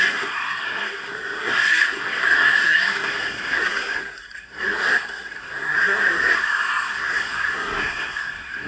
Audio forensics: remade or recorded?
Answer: remade